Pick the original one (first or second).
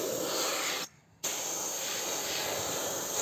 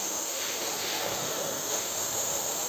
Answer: first